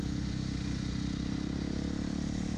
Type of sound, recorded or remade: recorded